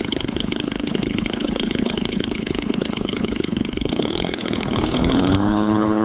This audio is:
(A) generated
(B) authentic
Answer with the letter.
A